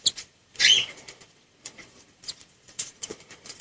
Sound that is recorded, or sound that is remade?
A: remade